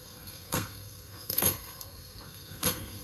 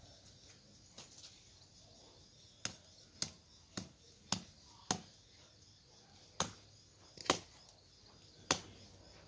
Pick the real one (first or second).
second